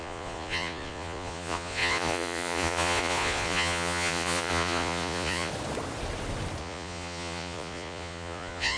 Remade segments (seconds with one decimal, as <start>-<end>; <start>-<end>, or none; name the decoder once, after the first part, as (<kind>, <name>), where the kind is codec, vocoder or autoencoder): 0.0-5.5 (vocoder, Vocos); 6.6-8.8